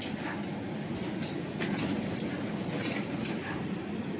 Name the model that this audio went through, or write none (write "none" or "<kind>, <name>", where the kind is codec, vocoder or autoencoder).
none